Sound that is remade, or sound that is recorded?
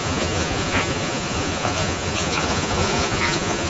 remade